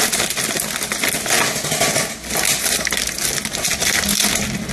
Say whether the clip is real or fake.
real